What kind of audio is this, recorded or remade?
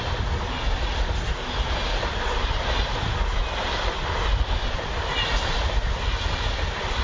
recorded